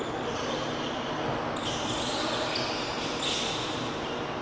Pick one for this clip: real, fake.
real